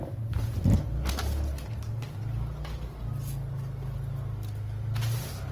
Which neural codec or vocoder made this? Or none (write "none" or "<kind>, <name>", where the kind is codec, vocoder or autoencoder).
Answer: none